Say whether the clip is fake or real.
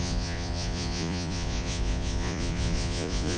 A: fake